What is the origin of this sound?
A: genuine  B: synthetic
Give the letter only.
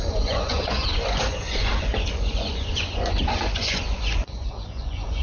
B